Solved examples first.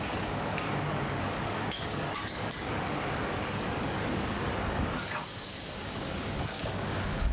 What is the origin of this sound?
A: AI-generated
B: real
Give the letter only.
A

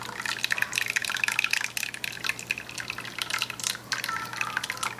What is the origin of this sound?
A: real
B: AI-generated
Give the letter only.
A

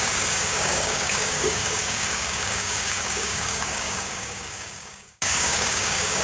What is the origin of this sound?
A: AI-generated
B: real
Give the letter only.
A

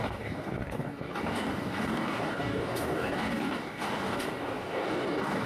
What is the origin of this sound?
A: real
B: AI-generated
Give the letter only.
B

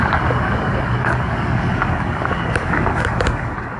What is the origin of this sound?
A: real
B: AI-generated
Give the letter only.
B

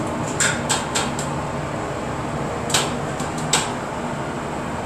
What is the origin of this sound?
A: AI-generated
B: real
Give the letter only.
B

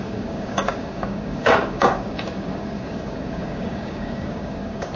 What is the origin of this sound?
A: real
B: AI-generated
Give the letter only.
B